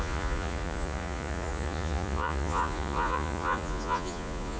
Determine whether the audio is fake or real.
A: fake